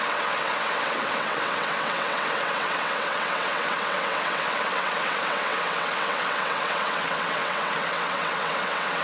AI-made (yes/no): yes